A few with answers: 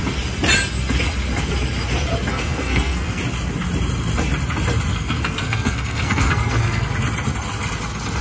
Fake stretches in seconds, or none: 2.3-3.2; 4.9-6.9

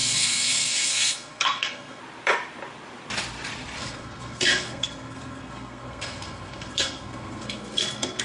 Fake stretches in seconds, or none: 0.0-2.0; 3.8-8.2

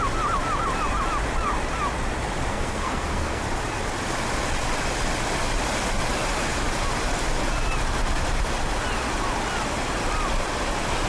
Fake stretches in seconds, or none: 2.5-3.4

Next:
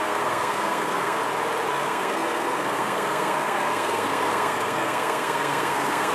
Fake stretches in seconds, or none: 0.0-1.2; 1.7-6.1

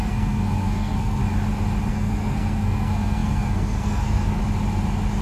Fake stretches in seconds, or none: 0.0-1.2; 1.9-4.4

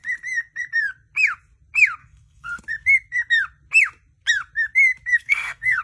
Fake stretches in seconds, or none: 2.0-2.6; 5.2-5.8

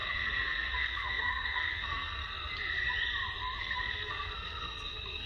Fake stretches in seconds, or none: 0.0-2.2; 3.6-5.3